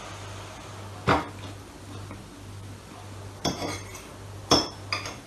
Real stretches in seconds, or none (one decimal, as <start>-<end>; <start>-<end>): 0.0-5.3